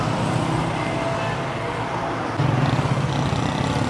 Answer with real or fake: real